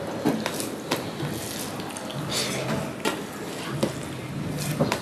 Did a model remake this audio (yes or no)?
no